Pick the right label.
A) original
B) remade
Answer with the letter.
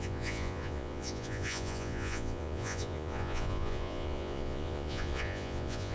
B